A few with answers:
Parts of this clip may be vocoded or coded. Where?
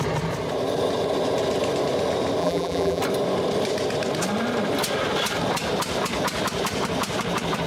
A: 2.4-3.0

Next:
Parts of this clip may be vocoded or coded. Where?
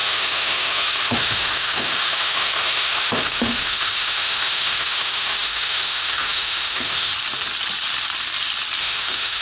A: 0.0-7.1; 8.8-9.4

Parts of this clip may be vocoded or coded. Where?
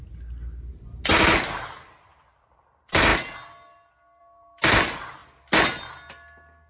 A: none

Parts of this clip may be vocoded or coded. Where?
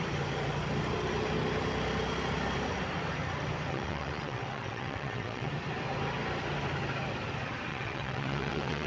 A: 3.7-5.5; 7.7-8.9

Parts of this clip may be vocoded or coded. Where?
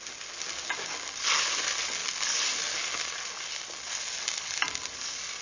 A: 0.0-2.0; 3.9-5.4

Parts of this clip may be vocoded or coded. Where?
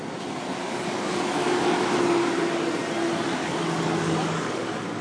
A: 0.7-2.3; 3.4-5.0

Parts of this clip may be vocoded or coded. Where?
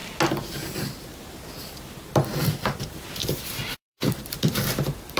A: 3.1-5.2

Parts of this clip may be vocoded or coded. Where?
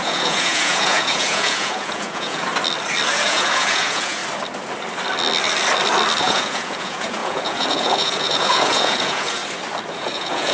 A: 0.0-2.5; 3.1-4.2; 6.2-9.4; 9.9-10.5